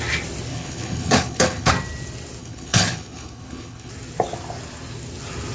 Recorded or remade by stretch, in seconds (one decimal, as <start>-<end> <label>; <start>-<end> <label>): 0.0-0.5 recorded; 0.5-1.7 remade; 1.7-2.4 recorded; 2.4-3.9 remade; 3.9-5.5 recorded